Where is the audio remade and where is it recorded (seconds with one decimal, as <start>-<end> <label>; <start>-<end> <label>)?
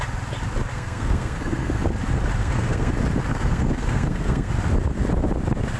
0.0-0.7 recorded; 0.7-1.8 remade; 1.8-2.4 recorded; 2.4-2.9 remade; 2.9-3.3 recorded; 3.3-4.5 remade; 4.5-5.8 recorded